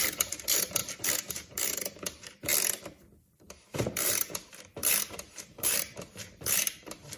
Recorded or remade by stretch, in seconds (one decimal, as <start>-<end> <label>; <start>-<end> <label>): 0.0-0.8 remade; 0.8-1.3 recorded; 1.3-2.5 remade; 2.5-3.2 recorded; 3.2-7.2 remade